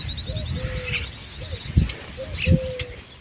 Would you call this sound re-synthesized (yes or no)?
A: no